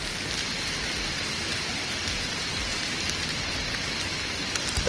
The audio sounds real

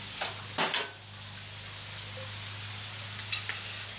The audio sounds real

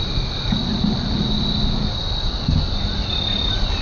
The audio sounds real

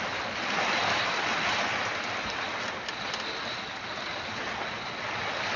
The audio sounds real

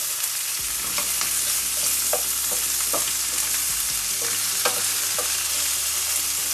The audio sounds real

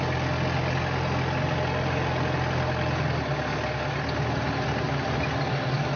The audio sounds real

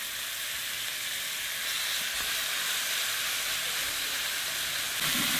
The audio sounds real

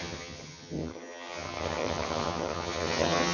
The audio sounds fake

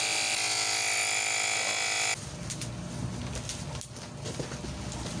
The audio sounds real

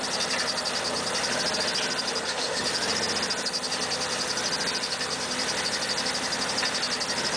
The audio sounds real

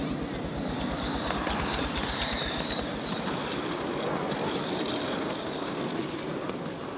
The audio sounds real